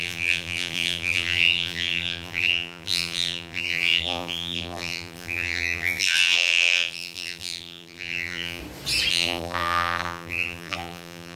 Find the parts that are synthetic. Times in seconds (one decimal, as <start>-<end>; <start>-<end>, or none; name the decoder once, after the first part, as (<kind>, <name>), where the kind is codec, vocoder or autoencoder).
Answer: 0.0-8.6 (vocoder, BigVGAN v2); 9.1-11.4